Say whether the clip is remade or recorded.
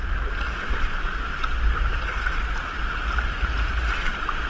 recorded